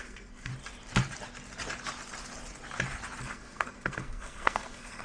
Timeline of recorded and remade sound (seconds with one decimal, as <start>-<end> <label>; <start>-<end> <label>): 0.0-0.5 remade; 0.5-3.2 recorded; 3.2-5.0 remade